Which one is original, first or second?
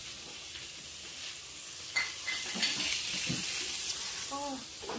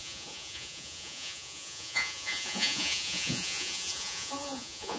first